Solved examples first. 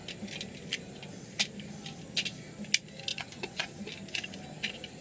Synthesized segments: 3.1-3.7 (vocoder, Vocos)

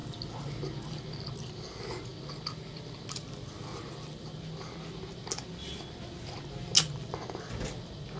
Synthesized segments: none

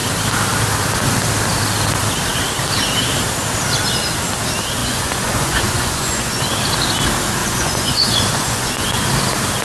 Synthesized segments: 4.8-6.4 (vocoder, Vocos); 7.4-9.0

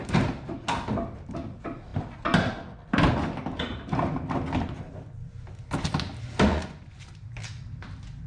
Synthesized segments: 6.5-7.0 (vocoder, Vocos)

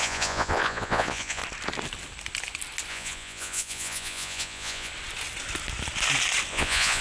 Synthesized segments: 0.0-1.4 (vocoder, Vocos); 2.9-4.9; 6.5-7.0

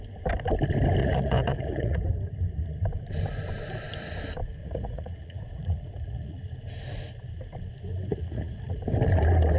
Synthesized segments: 1.0-2.0 (vocoder, Vocos); 4.6-6.4; 8.1-8.8